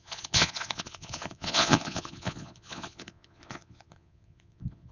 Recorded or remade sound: remade